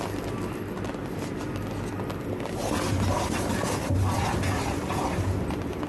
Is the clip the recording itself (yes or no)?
yes